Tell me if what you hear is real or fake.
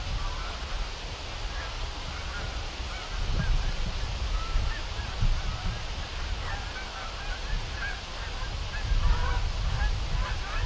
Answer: real